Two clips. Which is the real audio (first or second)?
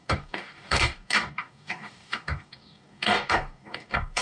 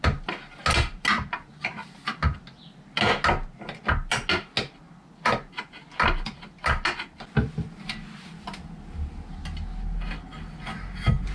second